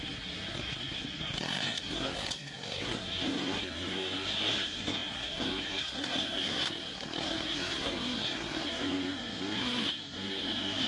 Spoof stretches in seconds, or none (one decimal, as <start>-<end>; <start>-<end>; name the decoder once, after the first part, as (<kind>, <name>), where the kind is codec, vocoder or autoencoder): 0.0-10.9 (codec, SNAC)